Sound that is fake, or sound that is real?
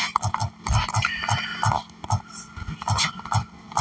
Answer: real